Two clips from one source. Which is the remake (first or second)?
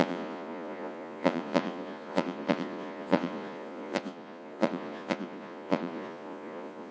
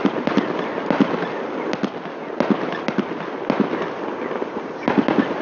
first